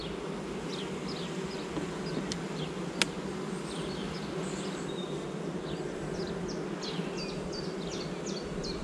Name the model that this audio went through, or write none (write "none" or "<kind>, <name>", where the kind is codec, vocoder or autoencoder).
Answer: none